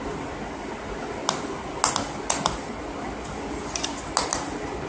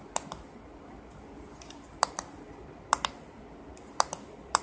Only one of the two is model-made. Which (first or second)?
second